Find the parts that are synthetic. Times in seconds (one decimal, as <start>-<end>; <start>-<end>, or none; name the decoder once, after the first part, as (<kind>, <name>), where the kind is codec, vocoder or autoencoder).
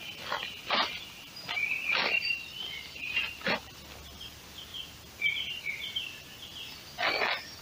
2.0-3.2 (vocoder, BigVGAN v2)